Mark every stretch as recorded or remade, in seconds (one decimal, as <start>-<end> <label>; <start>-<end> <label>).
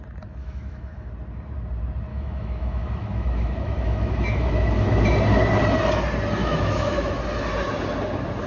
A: 0.0-0.4 recorded; 0.4-1.1 remade; 1.1-2.1 recorded; 2.1-5.0 remade; 5.0-6.4 recorded; 6.4-7.2 remade; 7.2-8.5 recorded